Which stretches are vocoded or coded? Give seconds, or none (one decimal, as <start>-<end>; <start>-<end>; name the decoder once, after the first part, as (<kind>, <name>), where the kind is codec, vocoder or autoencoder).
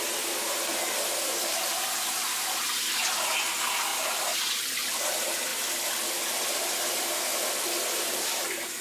none